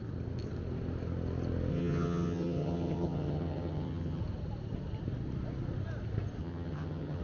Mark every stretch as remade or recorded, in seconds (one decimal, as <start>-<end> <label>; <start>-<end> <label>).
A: 0.0-1.7 recorded; 1.7-4.2 remade; 4.2-6.4 recorded; 6.4-7.2 remade